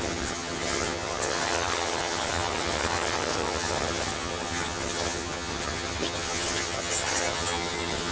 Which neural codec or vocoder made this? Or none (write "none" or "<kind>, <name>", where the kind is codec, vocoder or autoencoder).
vocoder, HiFi-GAN